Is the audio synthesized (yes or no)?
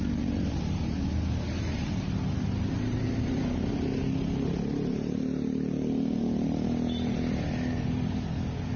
no